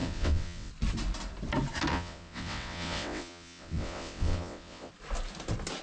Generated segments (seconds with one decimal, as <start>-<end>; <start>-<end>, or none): 0.0-0.7; 1.9-4.9

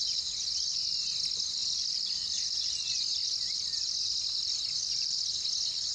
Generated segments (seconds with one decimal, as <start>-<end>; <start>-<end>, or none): 1.6-2.7; 3.2-5.3

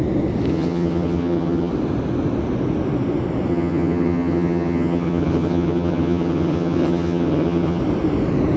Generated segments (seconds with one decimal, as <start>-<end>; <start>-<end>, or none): 0.5-1.7; 3.5-7.8

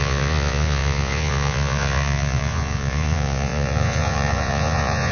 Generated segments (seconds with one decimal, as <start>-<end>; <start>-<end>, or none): 0.0-5.1

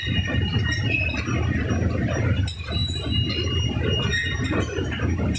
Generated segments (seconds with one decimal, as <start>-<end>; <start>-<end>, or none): none

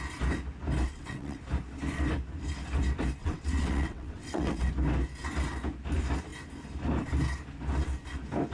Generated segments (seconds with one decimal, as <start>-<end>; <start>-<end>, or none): 0.9-1.4; 3.2-4.7